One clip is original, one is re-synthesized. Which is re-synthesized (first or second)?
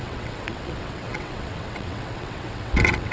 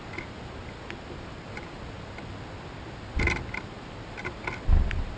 first